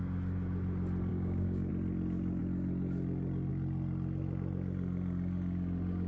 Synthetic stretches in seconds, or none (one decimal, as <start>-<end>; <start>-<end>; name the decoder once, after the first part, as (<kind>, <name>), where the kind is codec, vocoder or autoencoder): 1.1-1.7 (codec, DAC)